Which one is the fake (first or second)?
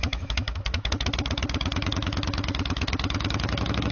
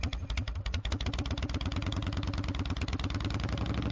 first